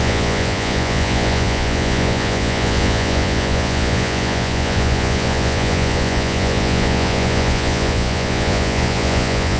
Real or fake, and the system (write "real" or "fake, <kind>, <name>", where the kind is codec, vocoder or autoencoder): fake, vocoder, Vocos